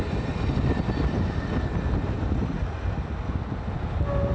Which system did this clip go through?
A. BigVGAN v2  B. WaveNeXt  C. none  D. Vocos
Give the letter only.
C